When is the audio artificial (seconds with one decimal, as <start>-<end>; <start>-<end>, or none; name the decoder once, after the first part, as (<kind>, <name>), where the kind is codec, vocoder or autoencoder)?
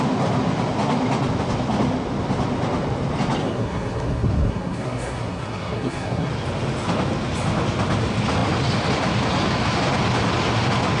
3.4-6.3 (codec, SNAC)